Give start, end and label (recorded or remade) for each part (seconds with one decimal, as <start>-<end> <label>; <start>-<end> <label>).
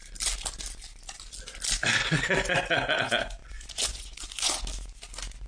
0.0-3.4 recorded; 3.4-4.6 remade; 4.6-5.5 recorded